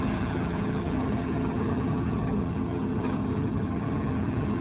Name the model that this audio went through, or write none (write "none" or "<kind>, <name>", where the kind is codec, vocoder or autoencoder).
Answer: vocoder, HiFi-GAN